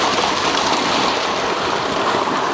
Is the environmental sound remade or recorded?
remade